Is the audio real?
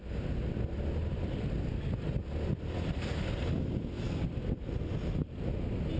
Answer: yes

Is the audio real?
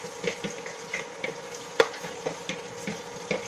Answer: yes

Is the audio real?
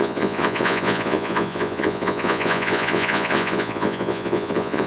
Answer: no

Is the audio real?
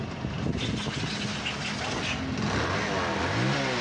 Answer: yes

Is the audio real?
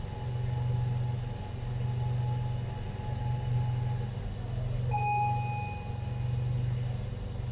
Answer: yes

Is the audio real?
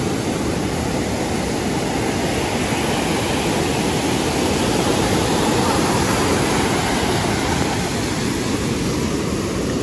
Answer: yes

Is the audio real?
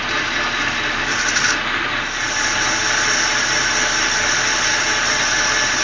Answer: yes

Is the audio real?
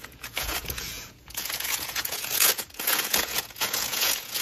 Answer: no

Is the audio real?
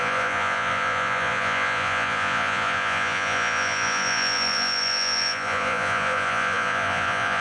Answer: no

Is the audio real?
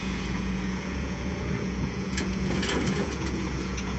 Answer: no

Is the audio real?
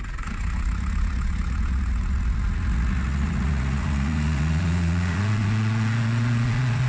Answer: no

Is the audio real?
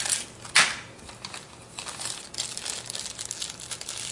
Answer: yes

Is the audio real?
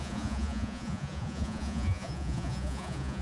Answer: no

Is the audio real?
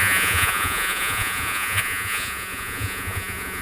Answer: no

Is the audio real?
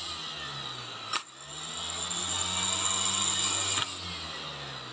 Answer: yes